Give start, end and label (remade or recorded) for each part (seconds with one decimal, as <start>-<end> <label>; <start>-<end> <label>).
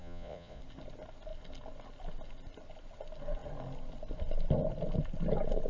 0.0-0.6 remade; 0.6-5.7 recorded